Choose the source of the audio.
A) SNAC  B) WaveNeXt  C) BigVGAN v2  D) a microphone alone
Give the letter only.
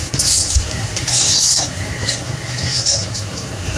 A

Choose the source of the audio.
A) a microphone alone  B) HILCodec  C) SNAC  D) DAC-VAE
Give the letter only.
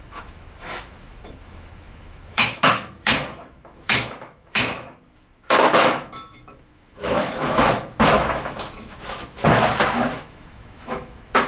D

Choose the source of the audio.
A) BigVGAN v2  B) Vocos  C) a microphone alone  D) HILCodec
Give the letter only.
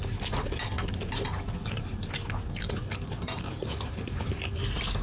C